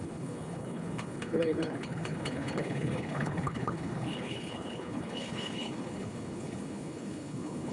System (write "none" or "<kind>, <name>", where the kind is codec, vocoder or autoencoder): codec, HILCodec